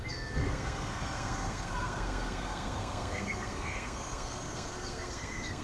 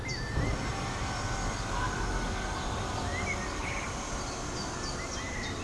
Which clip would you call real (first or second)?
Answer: second